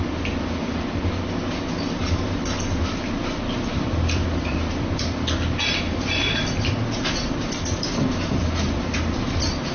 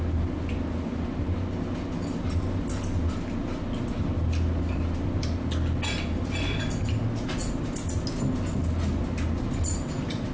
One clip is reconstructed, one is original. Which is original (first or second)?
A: second